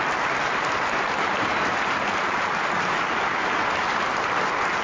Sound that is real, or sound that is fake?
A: real